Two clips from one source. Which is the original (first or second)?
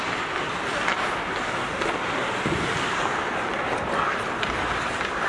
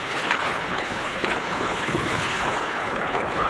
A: first